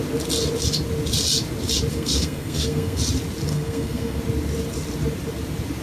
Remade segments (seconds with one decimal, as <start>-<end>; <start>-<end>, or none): 1.9-3.0; 3.5-4.2